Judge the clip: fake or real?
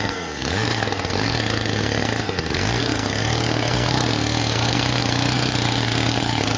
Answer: fake